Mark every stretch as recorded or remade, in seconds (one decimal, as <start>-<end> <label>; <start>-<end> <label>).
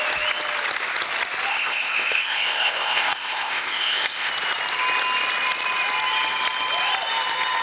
0.0-1.5 recorded; 1.5-4.3 remade; 4.3-7.6 recorded